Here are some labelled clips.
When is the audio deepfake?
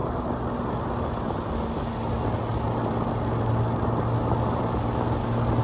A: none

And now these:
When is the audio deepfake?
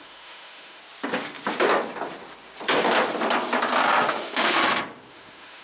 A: 0.0-0.8; 4.1-4.6; 5.1-5.6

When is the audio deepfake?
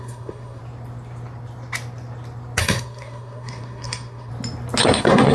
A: 0.0-0.6; 2.6-4.3; 4.8-5.3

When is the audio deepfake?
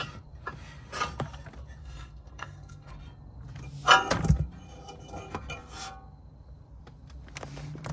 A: 1.8-2.9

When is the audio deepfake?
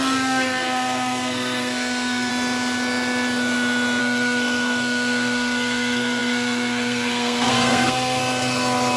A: 0.0-2.3; 4.0-8.2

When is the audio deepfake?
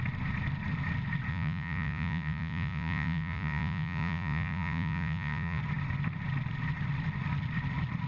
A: 1.3-5.6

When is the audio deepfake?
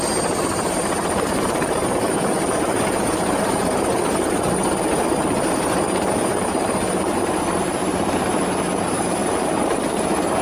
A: 0.0-10.4